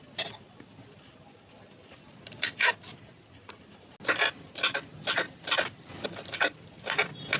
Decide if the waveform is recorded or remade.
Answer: recorded